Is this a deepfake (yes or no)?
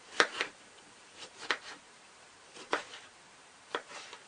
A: yes